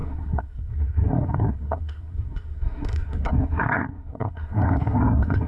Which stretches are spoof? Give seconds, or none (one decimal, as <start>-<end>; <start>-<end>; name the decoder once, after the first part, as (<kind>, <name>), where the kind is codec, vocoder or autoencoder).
0.0-5.5 (codec, SNAC)